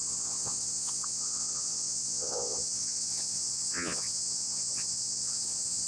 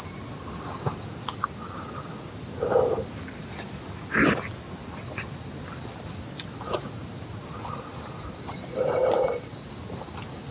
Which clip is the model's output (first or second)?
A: first